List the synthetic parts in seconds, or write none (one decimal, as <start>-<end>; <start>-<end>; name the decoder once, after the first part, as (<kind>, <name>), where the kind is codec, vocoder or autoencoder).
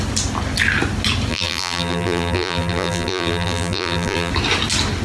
1.3-4.3 (vocoder, BigVGAN v2)